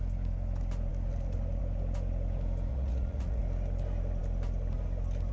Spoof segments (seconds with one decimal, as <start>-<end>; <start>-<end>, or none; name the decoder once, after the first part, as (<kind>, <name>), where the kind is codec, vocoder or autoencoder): 2.7-3.4 (vocoder, Vocos)